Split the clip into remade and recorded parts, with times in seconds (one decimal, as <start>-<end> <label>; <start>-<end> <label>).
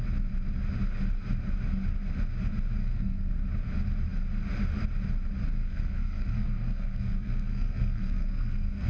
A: 0.0-2.8 recorded; 2.8-3.3 remade; 3.3-5.6 recorded; 5.6-8.9 remade